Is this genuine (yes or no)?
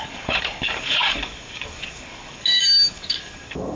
no